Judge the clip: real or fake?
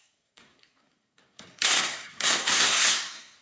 fake